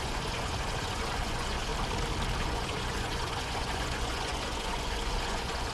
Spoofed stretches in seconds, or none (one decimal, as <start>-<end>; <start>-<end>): 0.0-1.7; 2.4-5.7